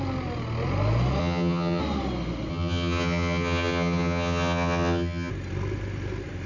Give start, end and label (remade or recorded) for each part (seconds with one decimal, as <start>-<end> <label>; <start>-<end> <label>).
0.0-1.2 recorded; 1.2-1.8 remade; 1.8-2.5 recorded; 2.5-5.3 remade; 5.3-6.5 recorded